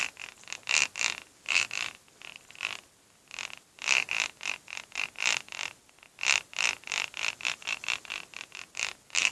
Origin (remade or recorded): recorded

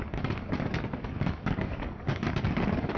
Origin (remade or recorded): remade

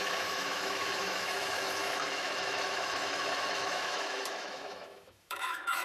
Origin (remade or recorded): remade